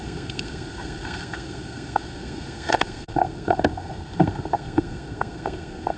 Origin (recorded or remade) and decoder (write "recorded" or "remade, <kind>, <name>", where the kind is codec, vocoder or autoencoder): remade, codec, SNAC